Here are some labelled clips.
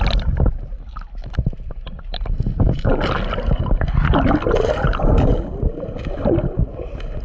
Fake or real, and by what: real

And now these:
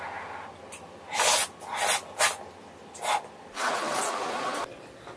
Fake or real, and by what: real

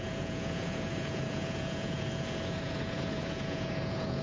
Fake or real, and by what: fake, vocoder, Vocos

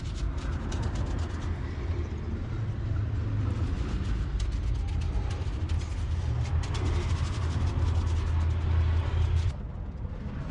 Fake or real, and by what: real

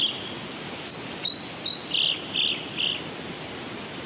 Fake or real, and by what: real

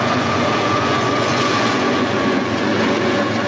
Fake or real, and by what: fake, vocoder, Vocos